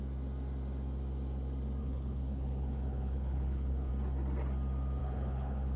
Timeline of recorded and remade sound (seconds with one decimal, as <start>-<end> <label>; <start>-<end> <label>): 0.0-1.8 recorded; 1.8-3.9 remade; 3.9-5.0 recorded; 5.0-5.8 remade